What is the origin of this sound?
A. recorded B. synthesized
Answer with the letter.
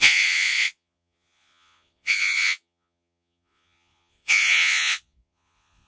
B